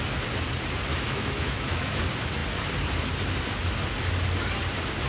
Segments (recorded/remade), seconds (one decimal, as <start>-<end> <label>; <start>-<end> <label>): 0.0-0.9 recorded; 0.9-2.0 remade; 2.0-5.1 recorded